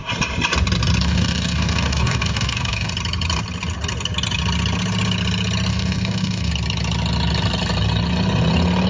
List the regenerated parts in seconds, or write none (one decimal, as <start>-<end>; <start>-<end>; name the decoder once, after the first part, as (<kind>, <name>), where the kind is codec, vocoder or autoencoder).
1.0-2.9 (codec, DAC); 5.7-6.5